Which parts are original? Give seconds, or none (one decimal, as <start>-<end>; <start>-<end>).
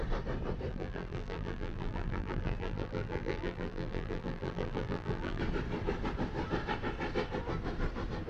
0.0-0.7; 5.4-8.3